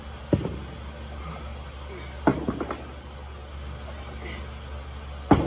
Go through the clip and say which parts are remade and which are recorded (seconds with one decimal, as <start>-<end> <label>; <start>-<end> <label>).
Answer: 0.0-5.5 recorded